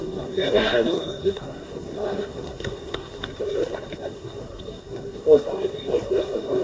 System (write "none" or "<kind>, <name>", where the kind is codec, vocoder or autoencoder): codec, SNAC